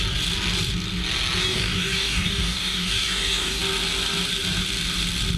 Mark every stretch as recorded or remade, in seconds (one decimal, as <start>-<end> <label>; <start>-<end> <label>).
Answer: 0.0-1.4 recorded; 1.4-3.6 remade; 3.6-5.4 recorded